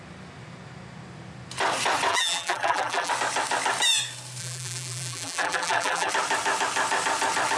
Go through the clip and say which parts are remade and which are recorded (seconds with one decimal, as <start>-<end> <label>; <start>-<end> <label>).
0.0-2.1 recorded; 2.1-3.1 remade; 3.1-4.4 recorded; 4.4-6.1 remade; 6.1-7.6 recorded